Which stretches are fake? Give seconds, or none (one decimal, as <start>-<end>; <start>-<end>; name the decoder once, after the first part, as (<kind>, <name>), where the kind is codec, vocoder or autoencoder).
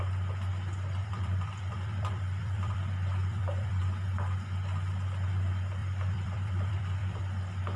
1.0-3.8 (vocoder, BigVGAN v2); 5.8-7.2